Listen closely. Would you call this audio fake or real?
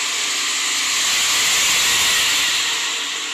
real